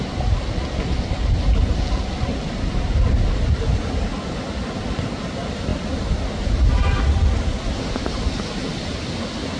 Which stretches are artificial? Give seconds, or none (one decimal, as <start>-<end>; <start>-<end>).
none